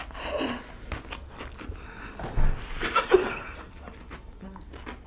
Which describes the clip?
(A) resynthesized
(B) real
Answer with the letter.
B